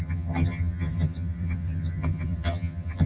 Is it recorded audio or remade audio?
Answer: remade